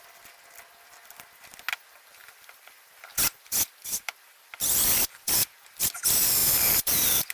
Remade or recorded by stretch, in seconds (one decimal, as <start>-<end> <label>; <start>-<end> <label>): 0.0-2.2 recorded; 2.2-5.5 remade; 5.5-6.4 recorded; 6.4-7.3 remade